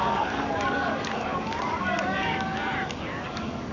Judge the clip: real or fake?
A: fake